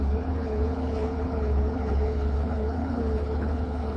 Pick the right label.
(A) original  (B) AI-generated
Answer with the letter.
B